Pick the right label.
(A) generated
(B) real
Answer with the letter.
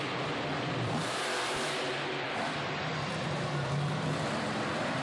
A